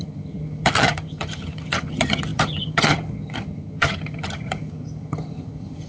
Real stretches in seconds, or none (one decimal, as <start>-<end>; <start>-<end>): none